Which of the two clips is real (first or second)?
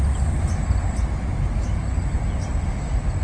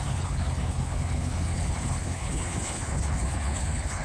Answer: first